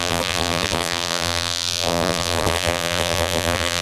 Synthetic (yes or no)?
yes